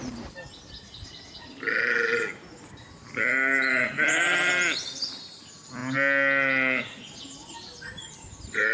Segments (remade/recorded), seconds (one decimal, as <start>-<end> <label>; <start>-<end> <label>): 0.0-8.7 recorded